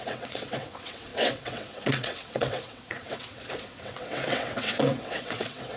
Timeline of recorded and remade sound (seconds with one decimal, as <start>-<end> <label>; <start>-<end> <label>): 0.0-5.8 remade